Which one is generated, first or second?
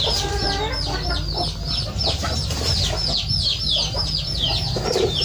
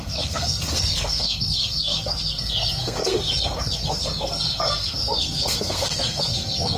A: second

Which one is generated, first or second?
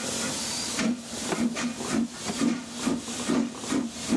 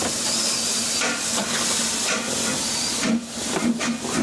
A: first